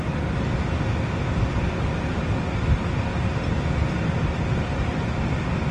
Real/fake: real